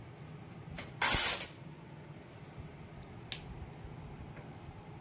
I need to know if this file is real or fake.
real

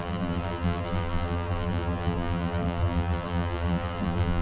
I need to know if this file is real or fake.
fake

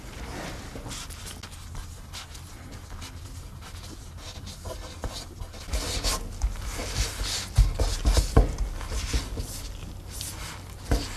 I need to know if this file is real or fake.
real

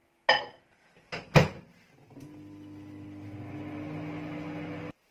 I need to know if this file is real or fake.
real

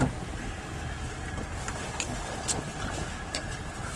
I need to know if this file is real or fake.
real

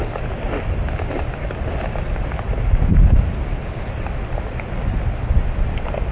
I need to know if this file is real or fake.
real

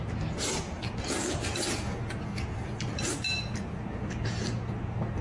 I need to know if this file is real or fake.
real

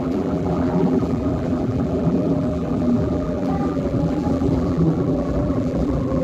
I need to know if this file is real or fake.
fake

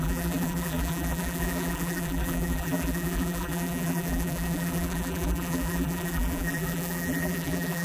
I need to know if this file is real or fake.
fake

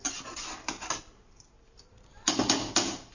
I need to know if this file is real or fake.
real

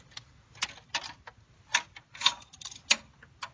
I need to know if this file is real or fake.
real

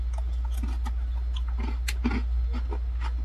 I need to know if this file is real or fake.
real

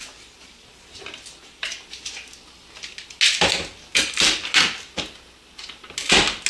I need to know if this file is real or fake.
real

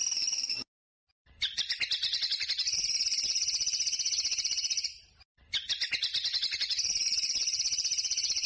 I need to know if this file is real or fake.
fake